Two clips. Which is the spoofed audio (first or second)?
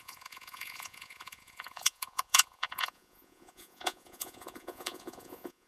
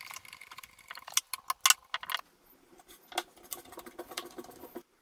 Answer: first